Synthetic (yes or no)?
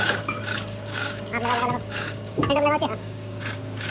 yes